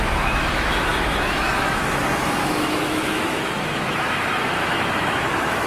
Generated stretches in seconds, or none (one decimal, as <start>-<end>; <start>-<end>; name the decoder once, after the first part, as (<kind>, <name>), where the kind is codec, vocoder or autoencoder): 0.0-5.7 (autoencoder, DAC-VAE)